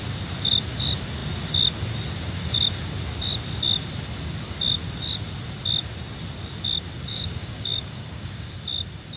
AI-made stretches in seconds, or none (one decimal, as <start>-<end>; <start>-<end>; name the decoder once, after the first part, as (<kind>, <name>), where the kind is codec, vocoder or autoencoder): 7.1-8.5 (codec, DAC)